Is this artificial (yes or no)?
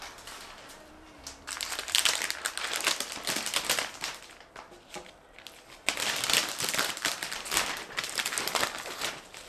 yes